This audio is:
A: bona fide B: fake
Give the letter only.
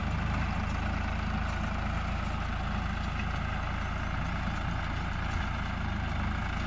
A